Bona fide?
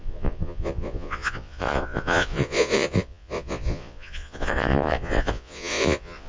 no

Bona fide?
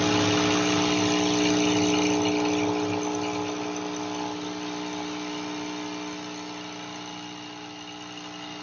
yes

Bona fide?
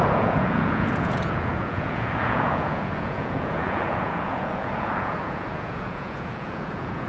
no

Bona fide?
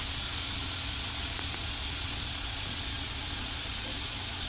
no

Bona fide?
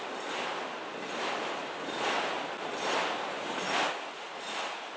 yes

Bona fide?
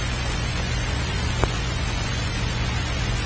no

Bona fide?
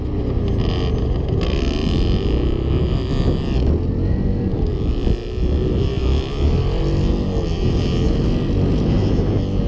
yes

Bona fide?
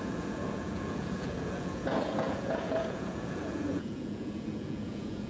no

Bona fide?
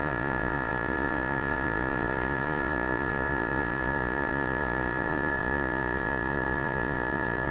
no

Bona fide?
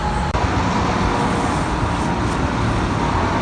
yes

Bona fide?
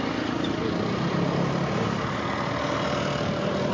yes